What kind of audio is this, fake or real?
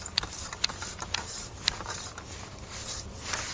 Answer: fake